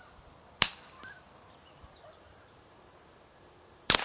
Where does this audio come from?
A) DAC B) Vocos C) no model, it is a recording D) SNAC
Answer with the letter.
C